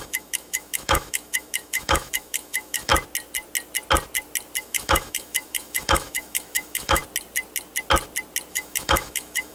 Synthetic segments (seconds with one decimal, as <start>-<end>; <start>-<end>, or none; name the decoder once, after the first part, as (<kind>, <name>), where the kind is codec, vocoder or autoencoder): 0.0-2.9 (autoencoder, DAC-VAE); 4.6-7.0; 8.5-9.5